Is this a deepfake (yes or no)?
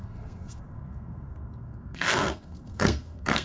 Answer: yes